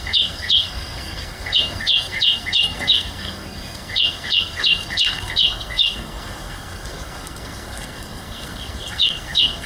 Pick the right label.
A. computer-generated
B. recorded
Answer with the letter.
A